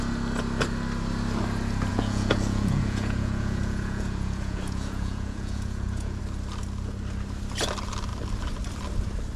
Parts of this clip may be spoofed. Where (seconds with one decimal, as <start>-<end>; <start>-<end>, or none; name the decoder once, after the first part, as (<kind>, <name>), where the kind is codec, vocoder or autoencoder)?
1.9-6.2 (vocoder, Vocos)